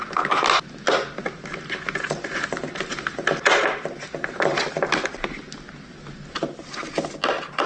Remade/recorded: recorded